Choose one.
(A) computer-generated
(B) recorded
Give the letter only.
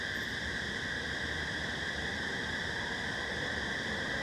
A